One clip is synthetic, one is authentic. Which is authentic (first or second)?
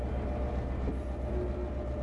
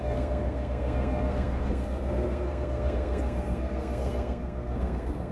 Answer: first